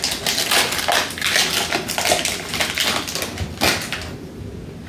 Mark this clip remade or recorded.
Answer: recorded